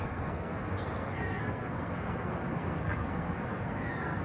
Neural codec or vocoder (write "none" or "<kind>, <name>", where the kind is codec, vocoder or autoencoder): codec, SNAC